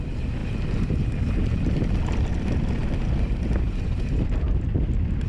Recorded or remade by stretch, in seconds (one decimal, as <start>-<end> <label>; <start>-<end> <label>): 0.0-5.3 recorded